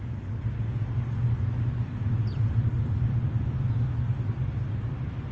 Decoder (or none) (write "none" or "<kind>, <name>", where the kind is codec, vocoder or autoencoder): none